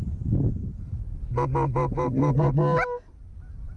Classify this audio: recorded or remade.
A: recorded